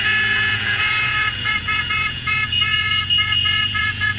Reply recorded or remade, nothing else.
remade